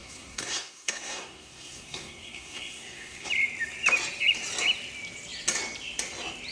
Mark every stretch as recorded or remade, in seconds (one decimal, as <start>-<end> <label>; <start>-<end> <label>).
0.0-3.3 remade; 3.3-6.5 recorded

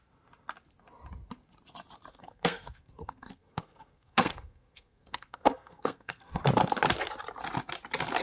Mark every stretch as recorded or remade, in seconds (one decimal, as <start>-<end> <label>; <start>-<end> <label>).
0.0-2.1 recorded; 2.1-6.4 remade; 6.4-8.2 recorded

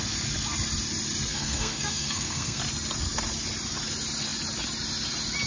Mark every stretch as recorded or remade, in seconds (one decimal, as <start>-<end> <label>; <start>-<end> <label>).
0.0-1.3 recorded; 1.3-2.6 remade; 2.6-5.5 recorded

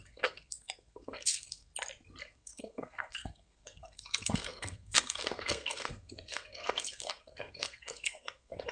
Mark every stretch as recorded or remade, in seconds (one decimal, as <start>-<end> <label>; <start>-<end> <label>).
0.0-1.7 remade; 1.7-2.2 recorded; 2.2-8.7 remade